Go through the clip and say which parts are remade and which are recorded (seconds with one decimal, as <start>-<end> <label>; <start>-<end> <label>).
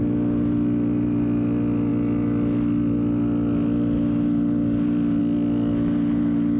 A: 0.0-6.6 recorded